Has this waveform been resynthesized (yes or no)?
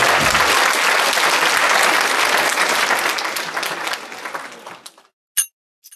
no